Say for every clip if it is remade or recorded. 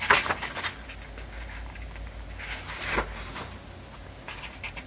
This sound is recorded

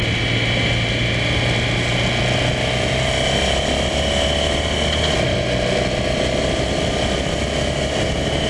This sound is recorded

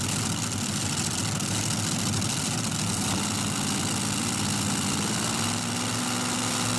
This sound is recorded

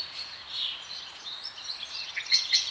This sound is remade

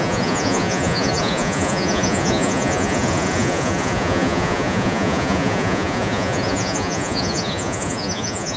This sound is remade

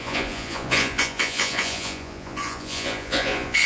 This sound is remade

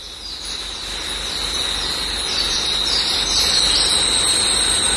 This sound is recorded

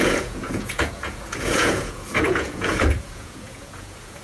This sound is remade